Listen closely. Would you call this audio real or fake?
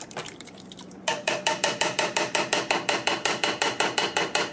fake